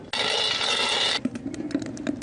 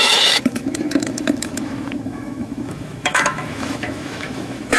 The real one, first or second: first